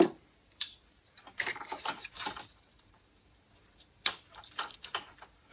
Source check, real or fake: fake